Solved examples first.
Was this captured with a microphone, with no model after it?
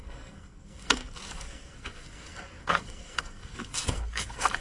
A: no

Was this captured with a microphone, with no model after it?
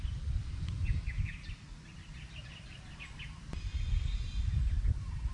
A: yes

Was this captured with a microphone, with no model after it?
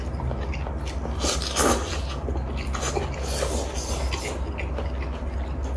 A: yes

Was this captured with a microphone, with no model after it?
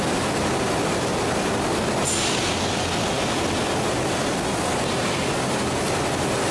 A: yes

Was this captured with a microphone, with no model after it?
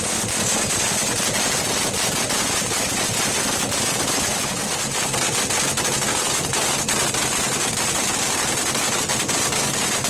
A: yes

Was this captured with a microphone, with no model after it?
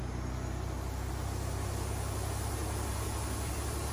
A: yes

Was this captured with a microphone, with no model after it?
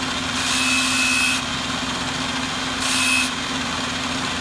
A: yes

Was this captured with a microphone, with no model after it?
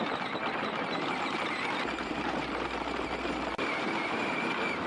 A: yes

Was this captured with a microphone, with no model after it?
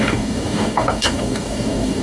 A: no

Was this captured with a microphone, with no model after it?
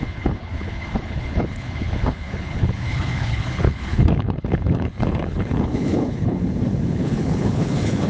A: no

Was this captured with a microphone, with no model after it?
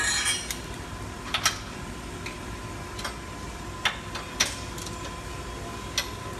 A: yes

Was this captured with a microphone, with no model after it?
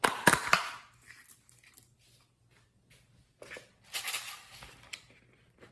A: yes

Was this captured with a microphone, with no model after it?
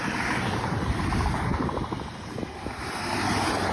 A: yes